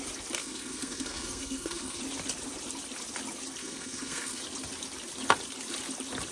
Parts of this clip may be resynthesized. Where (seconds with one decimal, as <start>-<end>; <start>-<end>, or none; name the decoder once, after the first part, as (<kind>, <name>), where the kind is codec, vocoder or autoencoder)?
0.4-2.0 (codec, SNAC); 3.6-4.4